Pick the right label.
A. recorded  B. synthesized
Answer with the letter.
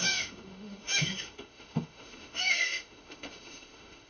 B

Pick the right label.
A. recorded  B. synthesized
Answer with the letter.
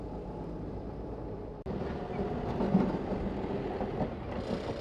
A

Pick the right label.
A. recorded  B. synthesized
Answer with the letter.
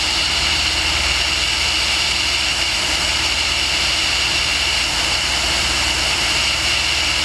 A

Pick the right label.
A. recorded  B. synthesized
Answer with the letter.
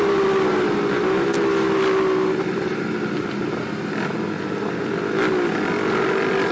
A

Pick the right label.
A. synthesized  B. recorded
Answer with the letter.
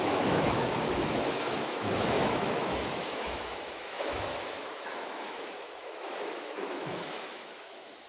A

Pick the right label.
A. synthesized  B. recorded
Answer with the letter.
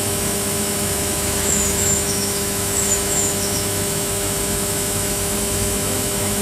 A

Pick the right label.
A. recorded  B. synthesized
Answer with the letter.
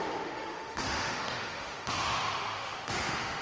B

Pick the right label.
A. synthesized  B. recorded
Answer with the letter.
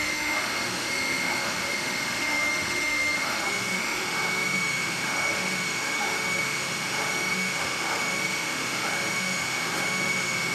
A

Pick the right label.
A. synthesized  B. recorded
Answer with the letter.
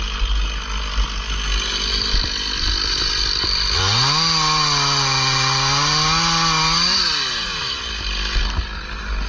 B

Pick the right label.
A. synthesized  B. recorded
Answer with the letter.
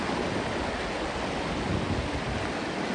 B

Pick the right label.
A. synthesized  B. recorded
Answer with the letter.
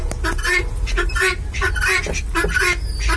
B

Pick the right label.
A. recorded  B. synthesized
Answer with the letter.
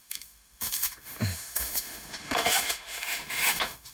B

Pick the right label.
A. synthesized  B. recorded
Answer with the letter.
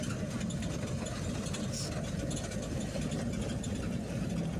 B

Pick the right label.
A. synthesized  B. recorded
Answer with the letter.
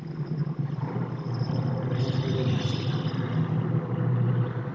B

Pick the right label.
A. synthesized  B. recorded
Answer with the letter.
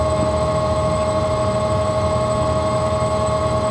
A